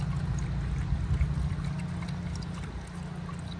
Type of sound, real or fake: real